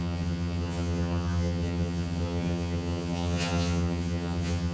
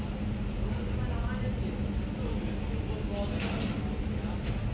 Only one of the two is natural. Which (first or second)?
second